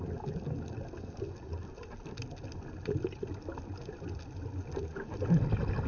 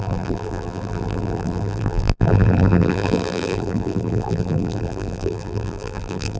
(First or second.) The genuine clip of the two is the first